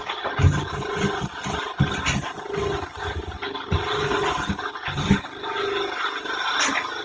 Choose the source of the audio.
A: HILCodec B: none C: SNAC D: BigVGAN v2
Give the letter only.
B